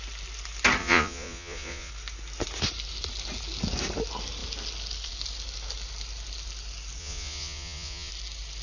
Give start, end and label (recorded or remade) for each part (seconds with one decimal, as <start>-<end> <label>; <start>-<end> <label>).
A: 0.0-0.8 recorded; 0.8-1.9 remade; 1.9-7.0 recorded; 7.0-8.1 remade; 8.1-8.6 recorded